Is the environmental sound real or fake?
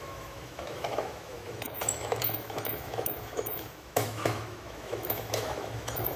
fake